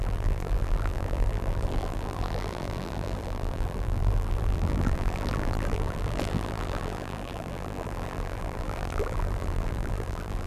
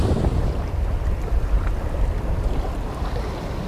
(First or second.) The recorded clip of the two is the second